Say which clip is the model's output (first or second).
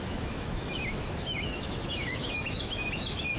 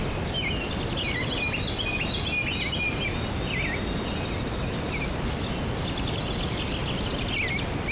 first